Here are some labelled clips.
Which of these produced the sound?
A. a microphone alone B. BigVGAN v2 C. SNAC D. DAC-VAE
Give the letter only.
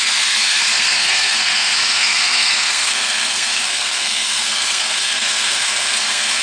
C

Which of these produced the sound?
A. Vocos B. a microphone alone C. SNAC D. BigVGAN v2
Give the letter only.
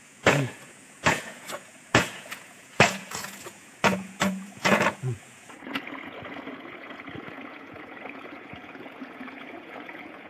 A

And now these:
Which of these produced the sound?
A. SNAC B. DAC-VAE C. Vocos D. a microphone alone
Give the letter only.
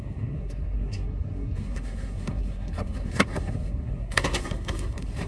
A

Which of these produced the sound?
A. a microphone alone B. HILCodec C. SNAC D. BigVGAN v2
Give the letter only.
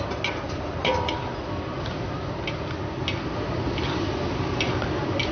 A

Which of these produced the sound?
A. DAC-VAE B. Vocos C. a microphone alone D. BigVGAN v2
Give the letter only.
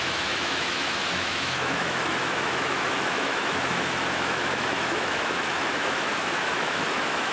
A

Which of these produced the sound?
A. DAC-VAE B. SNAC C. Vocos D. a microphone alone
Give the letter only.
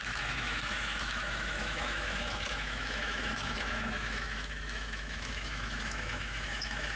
A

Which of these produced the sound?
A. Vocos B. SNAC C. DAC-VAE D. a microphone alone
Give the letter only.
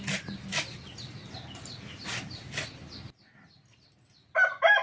D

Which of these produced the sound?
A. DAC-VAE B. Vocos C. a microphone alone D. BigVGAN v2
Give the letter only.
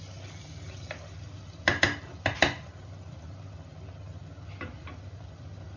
C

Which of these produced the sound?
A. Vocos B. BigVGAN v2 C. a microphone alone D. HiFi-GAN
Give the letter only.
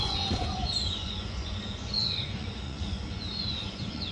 A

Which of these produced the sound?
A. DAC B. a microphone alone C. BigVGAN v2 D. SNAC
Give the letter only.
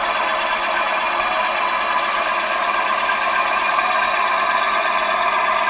B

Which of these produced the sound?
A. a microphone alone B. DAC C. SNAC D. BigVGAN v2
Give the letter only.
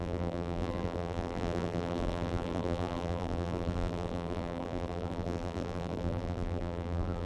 D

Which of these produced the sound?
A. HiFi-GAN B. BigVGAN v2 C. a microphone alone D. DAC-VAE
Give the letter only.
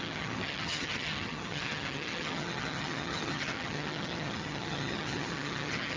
A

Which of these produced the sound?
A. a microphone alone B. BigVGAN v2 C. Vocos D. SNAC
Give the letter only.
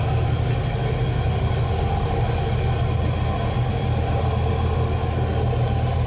A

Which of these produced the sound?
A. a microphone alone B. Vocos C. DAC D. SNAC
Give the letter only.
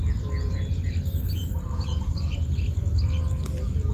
A